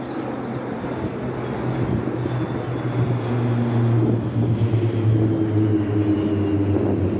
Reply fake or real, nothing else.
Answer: real